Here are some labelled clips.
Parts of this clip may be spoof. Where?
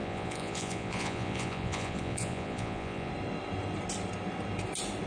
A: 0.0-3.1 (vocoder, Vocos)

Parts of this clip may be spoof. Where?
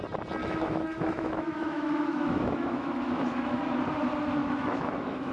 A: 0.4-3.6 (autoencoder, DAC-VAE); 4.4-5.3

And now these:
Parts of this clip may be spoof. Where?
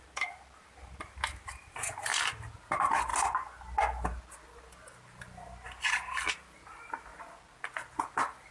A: 0.0-3.1 (vocoder, BigVGAN v2); 6.3-7.1; 8.1-8.5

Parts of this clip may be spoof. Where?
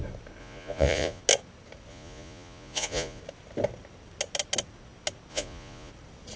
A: 0.4-1.2 (vocoder, Vocos); 1.9-3.2; 5.3-5.9